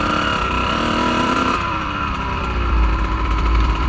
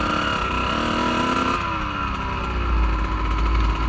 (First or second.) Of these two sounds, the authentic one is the second